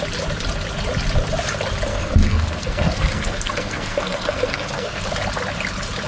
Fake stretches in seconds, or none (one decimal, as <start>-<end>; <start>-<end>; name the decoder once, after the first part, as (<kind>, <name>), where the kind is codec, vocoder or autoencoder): 1.9-5.0 (codec, SNAC)